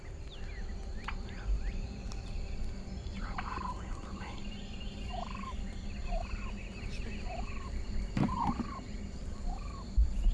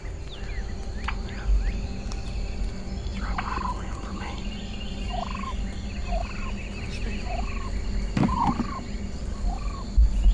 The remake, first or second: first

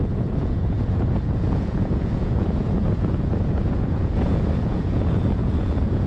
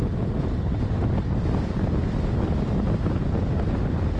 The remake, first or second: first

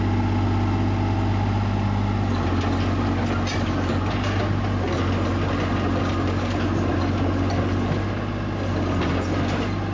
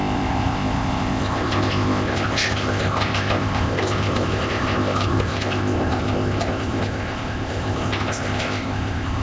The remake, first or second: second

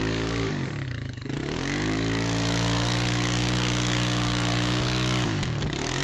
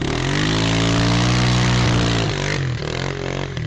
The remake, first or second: first